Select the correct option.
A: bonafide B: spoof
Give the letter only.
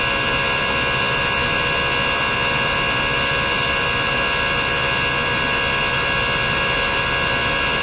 A